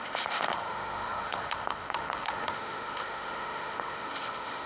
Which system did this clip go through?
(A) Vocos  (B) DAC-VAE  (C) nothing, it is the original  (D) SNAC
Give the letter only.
B